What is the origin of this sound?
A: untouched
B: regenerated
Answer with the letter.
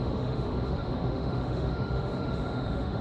B